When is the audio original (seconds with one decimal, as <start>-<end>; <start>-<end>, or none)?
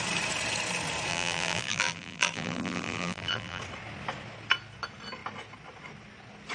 0.0-1.1; 3.6-6.5